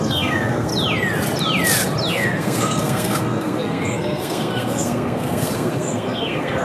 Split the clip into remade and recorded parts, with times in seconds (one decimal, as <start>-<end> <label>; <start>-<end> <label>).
0.0-0.7 remade; 0.7-2.1 recorded; 2.1-6.6 remade